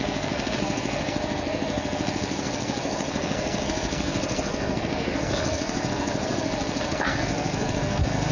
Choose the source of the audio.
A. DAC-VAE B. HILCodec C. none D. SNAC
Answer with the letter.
D